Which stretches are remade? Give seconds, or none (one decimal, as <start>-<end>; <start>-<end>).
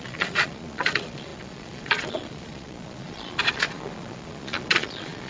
0.0-5.3